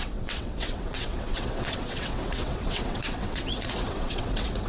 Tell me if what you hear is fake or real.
fake